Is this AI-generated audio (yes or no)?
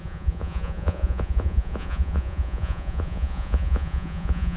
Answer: yes